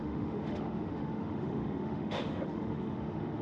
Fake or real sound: fake